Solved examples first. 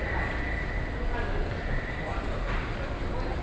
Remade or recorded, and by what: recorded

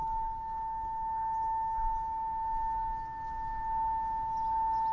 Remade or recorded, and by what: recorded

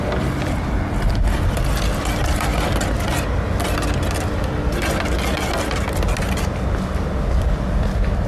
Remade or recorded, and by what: recorded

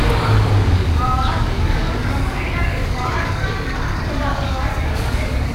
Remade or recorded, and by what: remade, codec, DAC